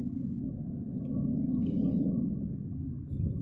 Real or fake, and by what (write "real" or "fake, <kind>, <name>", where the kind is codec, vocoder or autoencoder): fake, codec, DAC